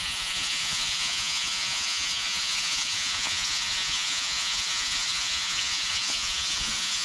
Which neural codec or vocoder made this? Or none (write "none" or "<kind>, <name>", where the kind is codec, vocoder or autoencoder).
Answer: vocoder, Vocos